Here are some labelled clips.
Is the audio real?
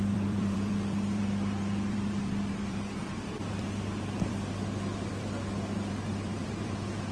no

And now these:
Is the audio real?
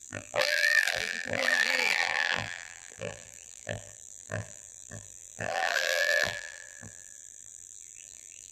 no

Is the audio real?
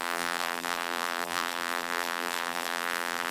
no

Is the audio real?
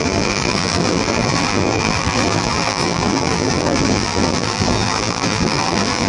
no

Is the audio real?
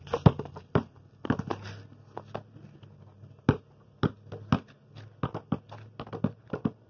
yes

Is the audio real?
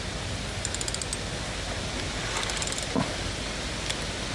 yes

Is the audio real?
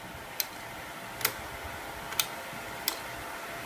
yes